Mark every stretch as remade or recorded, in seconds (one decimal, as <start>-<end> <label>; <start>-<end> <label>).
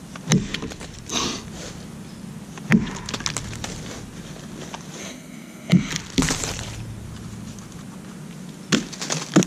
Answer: 0.0-5.0 recorded; 5.0-5.9 remade; 5.9-9.5 recorded